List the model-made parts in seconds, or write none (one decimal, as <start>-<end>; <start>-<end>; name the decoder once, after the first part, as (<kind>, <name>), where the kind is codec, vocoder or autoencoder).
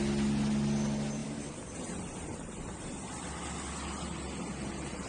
1.2-3.3 (vocoder, BigVGAN v2)